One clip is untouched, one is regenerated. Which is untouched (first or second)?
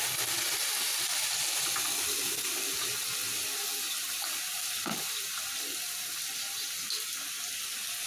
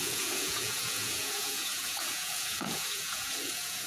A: first